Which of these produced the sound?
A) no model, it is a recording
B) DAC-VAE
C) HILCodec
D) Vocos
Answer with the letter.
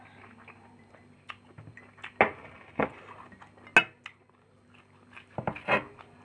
A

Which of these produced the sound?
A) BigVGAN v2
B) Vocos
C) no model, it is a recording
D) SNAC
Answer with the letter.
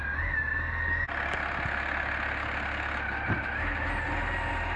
C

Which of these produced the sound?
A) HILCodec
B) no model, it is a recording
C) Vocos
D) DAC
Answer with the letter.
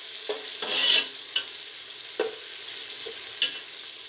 B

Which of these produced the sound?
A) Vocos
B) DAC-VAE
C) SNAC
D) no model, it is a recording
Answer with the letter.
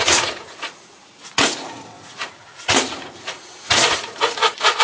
A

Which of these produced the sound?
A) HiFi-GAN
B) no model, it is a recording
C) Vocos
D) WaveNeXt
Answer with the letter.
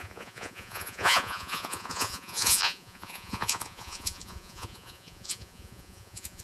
C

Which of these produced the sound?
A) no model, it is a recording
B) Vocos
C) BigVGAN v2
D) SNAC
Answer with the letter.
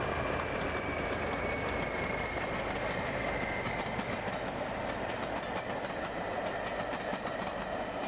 A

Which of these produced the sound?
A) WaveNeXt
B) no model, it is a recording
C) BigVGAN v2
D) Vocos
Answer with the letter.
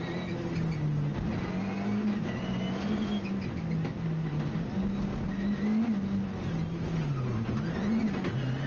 B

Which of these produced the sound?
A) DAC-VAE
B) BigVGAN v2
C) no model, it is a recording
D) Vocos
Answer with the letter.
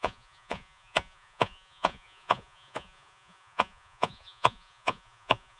D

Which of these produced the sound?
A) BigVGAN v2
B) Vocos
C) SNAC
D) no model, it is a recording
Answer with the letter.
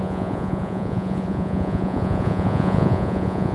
B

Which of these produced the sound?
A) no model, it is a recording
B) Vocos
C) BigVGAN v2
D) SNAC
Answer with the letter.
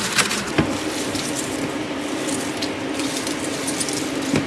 A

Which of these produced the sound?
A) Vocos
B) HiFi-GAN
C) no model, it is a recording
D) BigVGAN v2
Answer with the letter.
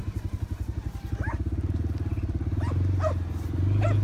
C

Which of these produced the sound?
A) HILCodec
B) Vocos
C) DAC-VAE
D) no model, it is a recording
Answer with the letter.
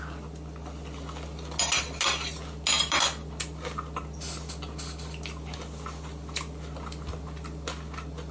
D